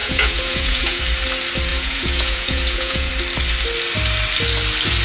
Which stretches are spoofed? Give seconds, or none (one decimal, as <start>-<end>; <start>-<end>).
0.0-1.0; 1.7-3.1